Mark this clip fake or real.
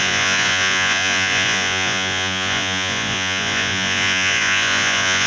fake